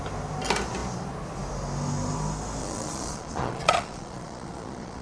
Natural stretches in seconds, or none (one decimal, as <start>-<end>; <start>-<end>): 0.0-2.6